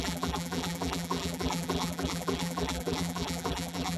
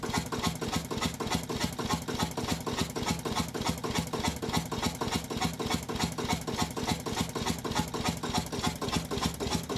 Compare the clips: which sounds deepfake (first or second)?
first